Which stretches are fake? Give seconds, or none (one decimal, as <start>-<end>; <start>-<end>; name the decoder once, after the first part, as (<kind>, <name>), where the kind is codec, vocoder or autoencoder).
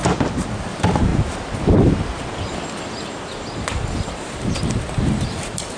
none